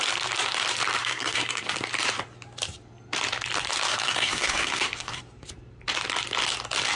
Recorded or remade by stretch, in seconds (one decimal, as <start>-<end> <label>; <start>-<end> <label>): 0.0-1.0 recorded; 1.0-1.6 remade; 1.6-3.9 recorded; 3.9-5.2 remade; 5.2-7.0 recorded